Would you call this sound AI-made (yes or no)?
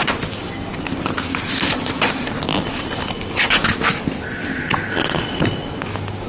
no